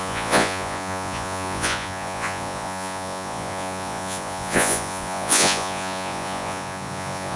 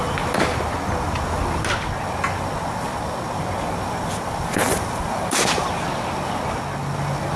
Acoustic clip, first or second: second